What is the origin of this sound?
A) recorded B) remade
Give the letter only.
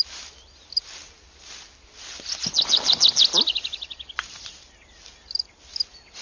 A